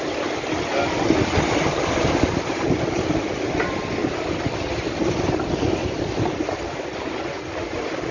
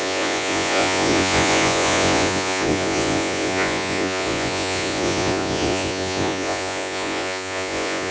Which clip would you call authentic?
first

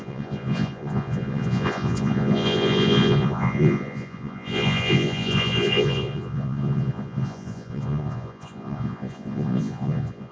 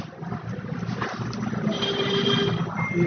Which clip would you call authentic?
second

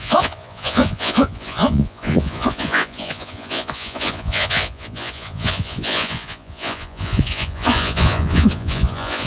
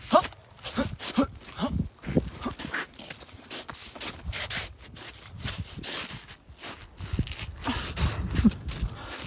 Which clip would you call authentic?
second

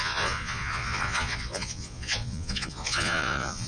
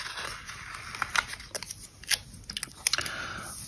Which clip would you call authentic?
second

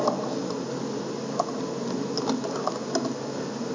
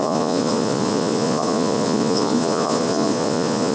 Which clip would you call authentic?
first